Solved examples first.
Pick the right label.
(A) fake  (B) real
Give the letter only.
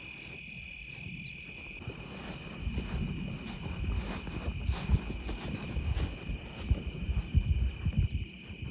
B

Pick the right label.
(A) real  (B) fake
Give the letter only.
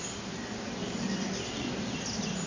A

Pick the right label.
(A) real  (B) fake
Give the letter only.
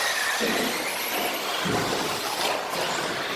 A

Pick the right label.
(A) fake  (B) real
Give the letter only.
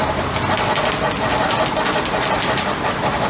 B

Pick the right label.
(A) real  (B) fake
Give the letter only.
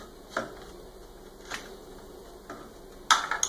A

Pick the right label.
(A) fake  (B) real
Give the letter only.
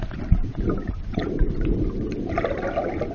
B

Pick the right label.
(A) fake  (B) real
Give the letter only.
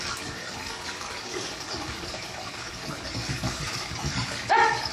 A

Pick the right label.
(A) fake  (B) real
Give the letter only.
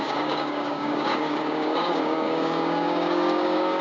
A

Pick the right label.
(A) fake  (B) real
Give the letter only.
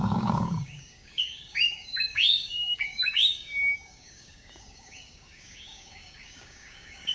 A